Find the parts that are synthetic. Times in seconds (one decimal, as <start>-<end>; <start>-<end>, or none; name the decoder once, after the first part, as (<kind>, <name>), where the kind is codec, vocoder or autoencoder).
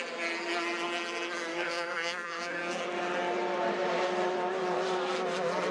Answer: 1.5-2.8 (codec, SNAC)